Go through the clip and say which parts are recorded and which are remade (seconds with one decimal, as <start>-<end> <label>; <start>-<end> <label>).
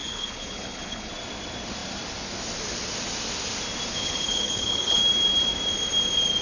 0.0-1.1 remade; 1.1-3.9 recorded; 3.9-5.0 remade; 5.0-6.4 recorded